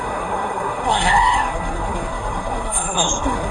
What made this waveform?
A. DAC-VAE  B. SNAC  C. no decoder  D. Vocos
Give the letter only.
B